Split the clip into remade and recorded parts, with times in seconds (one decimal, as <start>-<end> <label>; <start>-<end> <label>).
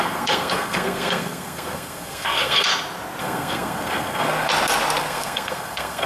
0.0-2.7 remade; 2.7-3.2 recorded; 3.2-4.5 remade; 4.5-5.0 recorded; 5.0-6.1 remade